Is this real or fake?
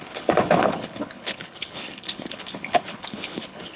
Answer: fake